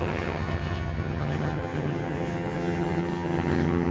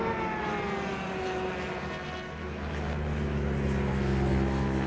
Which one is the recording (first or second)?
second